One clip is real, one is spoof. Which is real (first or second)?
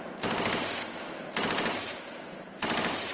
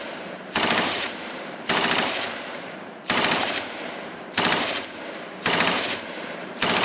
first